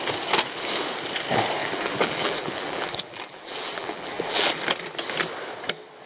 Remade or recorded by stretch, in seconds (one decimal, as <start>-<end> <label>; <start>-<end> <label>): 0.0-1.6 recorded; 1.6-4.5 remade; 4.5-6.1 recorded